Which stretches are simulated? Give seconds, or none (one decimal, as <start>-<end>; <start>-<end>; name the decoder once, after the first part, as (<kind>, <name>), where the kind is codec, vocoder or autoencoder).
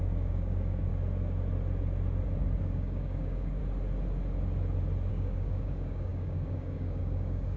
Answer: 0.0-0.9 (codec, DAC); 2.6-3.6; 5.1-7.6